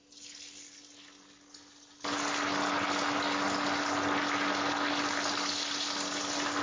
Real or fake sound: real